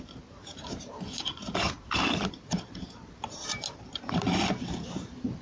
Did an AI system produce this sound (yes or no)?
yes